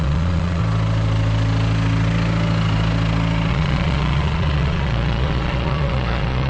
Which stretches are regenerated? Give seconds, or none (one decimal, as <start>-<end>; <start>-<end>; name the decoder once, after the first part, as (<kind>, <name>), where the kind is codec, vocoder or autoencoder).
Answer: 0.0-0.6 (vocoder, Vocos); 3.5-6.5